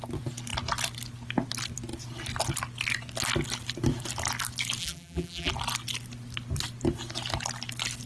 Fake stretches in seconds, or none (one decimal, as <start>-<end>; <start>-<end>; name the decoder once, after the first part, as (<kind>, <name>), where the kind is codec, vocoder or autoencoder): 4.8-5.5 (vocoder, BigVGAN v2)